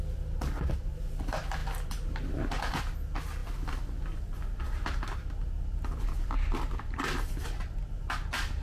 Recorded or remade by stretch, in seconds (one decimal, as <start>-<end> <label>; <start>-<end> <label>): 0.0-8.6 recorded